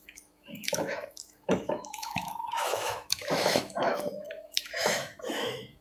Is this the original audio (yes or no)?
no